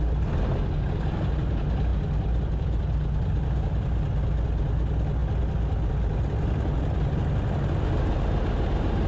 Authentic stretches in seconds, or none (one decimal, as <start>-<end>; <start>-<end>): 0.0-9.1